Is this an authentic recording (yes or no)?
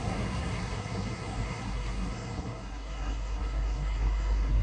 no